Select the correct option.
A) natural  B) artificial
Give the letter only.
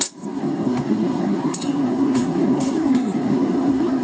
B